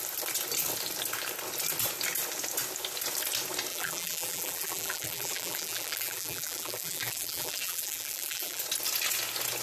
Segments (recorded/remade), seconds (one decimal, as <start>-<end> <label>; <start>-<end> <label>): 0.0-3.7 recorded; 3.7-8.6 remade; 8.6-9.6 recorded